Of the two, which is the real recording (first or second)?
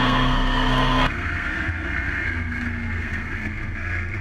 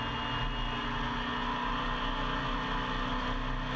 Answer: second